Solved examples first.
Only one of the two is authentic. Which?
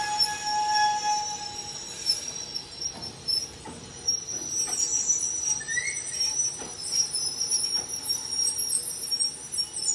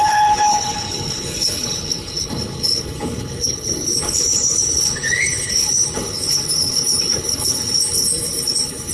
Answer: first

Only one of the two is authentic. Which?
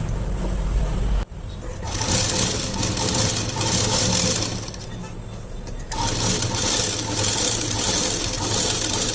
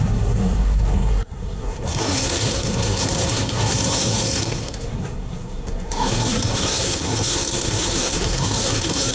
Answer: first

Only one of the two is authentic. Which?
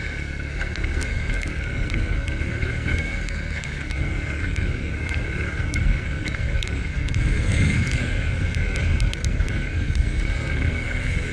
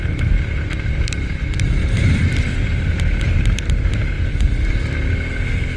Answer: second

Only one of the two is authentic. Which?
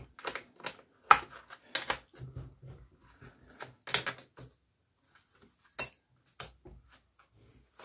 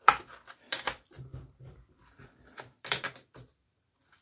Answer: first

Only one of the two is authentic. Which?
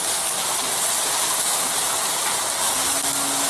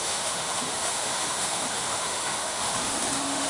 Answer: first